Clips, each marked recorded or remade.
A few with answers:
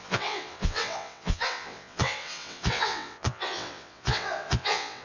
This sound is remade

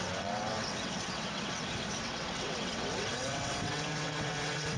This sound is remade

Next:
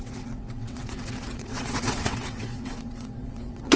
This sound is remade